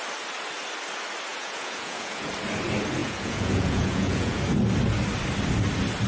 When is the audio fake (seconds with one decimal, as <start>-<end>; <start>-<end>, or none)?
1.3-2.3; 3.0-4.4